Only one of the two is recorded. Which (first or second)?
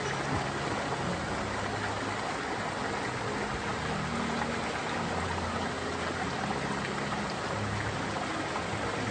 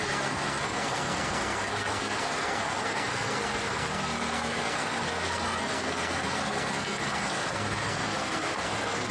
first